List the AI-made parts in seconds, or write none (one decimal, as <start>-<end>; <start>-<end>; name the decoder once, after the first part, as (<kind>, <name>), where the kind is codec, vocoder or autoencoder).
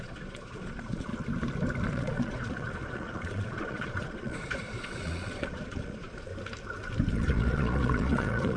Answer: 0.0-1.1 (vocoder, Vocos); 1.9-6.3; 7.1-8.6